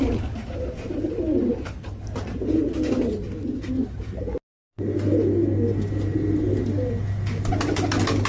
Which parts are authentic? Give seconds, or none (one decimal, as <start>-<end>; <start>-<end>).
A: 0.0-8.3

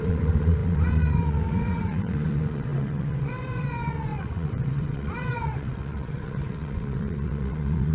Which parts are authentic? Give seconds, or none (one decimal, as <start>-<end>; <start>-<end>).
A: none

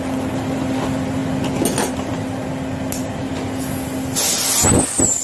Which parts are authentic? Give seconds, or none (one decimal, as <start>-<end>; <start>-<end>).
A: 0.0-5.2

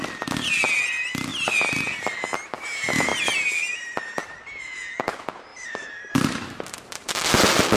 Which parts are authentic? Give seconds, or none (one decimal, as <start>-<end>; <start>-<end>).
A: 0.0-5.5; 6.1-7.8

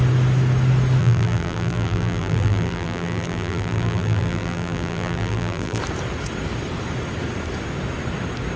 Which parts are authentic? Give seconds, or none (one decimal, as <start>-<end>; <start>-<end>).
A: 0.0-1.0; 5.8-8.6